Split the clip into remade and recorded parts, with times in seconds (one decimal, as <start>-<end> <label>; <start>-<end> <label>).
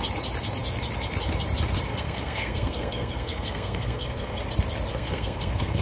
0.0-1.9 recorded; 1.9-4.4 remade; 4.4-4.9 recorded; 4.9-5.8 remade